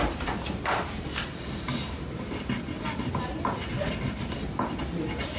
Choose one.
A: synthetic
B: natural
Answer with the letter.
B